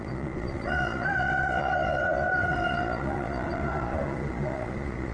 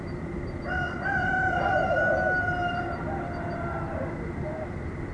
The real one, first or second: second